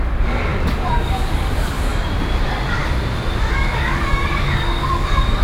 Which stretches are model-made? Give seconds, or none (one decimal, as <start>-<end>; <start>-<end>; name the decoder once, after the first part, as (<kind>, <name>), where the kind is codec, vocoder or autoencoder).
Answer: 0.0-1.9 (codec, DAC); 2.4-2.8; 3.5-5.4